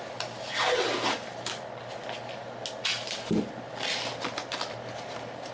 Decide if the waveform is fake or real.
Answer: real